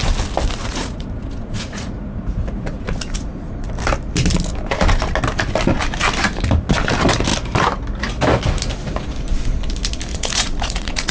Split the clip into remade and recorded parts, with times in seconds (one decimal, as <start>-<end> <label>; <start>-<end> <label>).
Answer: 0.0-0.6 recorded; 0.6-3.7 remade; 3.7-10.1 recorded; 10.1-11.1 remade